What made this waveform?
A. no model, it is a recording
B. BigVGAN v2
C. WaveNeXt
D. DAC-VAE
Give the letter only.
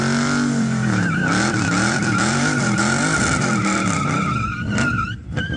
B